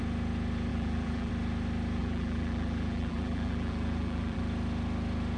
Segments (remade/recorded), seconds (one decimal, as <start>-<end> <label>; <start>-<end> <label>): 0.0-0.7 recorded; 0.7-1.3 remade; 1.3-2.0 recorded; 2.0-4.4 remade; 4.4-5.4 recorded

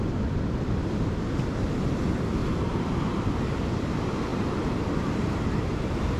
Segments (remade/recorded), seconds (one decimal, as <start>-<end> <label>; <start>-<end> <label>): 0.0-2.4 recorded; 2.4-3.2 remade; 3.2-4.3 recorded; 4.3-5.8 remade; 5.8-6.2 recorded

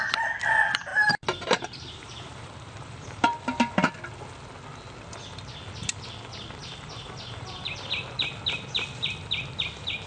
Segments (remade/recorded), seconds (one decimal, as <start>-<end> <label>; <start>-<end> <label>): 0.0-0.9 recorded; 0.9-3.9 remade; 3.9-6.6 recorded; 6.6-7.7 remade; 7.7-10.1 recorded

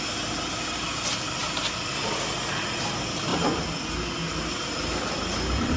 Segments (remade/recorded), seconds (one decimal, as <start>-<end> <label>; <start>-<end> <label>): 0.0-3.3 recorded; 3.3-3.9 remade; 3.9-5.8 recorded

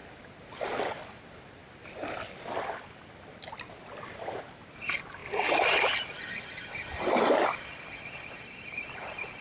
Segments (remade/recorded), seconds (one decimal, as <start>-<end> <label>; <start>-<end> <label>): 0.0-0.9 recorded; 0.9-1.6 remade; 1.6-4.8 recorded; 4.8-5.2 remade; 5.2-7.4 recorded; 7.4-9.4 remade

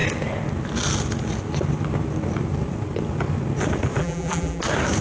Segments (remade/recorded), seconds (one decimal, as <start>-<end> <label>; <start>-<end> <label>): 0.0-4.0 recorded; 4.0-4.6 remade; 4.6-5.0 recorded